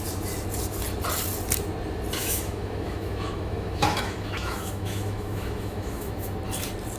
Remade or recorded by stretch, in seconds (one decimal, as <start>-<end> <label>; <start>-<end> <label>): 0.0-2.2 recorded; 2.2-6.3 remade; 6.3-7.0 recorded